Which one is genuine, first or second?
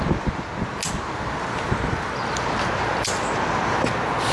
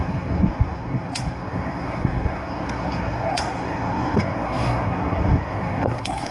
first